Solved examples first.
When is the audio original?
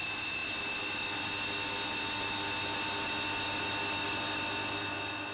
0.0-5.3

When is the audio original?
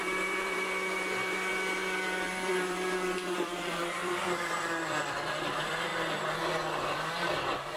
5.9-6.9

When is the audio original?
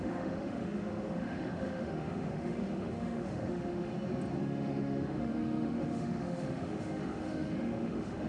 3.9-4.4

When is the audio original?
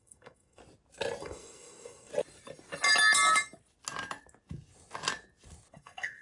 0.6-1.2; 2.1-5.7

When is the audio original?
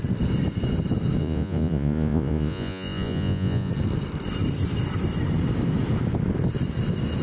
0.0-1.2; 3.7-7.2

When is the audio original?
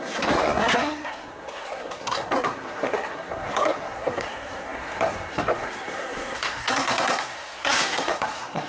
none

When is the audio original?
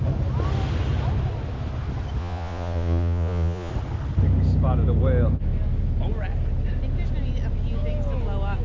0.0-2.2; 3.7-8.6